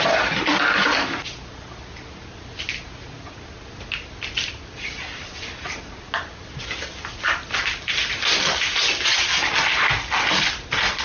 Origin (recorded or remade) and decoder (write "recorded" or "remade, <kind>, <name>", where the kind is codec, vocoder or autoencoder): recorded